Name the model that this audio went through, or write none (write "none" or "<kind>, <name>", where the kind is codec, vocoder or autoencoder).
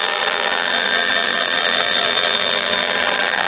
vocoder, BigVGAN v2